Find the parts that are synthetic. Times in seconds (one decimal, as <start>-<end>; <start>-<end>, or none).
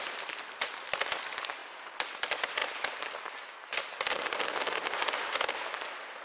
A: none